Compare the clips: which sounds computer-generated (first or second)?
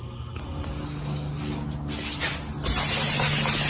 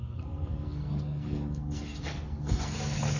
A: second